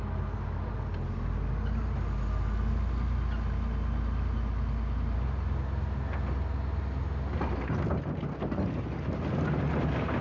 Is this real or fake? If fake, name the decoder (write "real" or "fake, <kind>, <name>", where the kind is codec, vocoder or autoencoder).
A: real